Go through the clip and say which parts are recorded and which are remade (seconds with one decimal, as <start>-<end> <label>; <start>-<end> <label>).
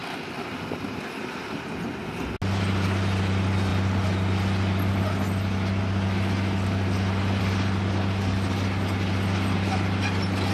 0.0-10.5 recorded